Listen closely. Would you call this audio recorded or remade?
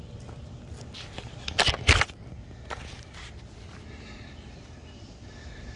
recorded